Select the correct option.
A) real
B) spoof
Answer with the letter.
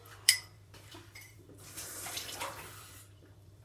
B